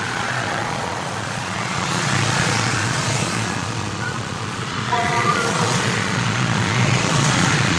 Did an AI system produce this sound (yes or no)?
yes